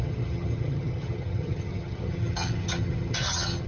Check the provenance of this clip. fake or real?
fake